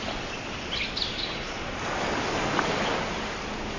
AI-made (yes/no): no